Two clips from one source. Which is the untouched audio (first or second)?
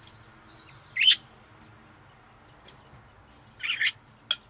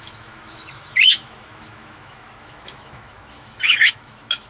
first